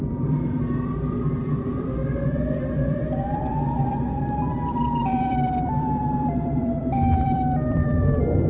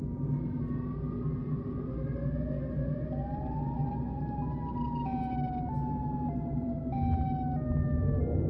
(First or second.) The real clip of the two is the second